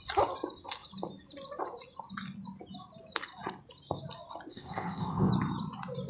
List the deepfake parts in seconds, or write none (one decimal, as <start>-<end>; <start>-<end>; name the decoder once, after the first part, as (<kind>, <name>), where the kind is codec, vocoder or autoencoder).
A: 4.5-5.3 (codec, ZipCodec)